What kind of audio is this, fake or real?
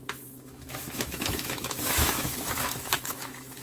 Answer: fake